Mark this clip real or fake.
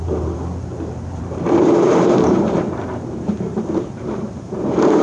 fake